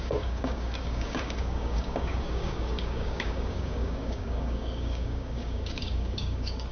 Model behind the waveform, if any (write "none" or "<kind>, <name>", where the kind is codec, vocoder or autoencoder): codec, DAC